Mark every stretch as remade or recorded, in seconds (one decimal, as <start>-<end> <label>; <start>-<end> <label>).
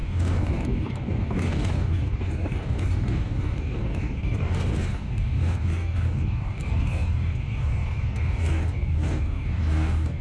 0.0-10.2 remade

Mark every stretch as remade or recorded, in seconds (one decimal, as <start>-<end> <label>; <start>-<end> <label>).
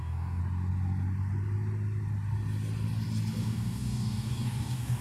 0.0-0.4 remade; 0.4-3.4 recorded; 3.4-5.0 remade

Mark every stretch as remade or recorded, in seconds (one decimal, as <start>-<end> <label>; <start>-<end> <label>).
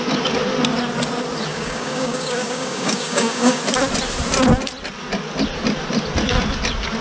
0.0-1.5 recorded; 1.5-3.6 remade; 3.6-7.0 recorded